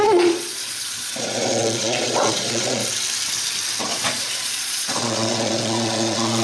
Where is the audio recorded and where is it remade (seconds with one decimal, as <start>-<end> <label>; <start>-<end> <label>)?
0.0-2.8 remade; 2.8-3.8 recorded; 3.8-6.4 remade